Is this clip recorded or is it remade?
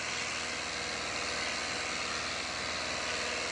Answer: recorded